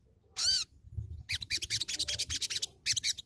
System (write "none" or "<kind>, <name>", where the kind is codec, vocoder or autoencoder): none